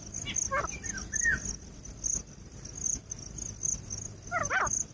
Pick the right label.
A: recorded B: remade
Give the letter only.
A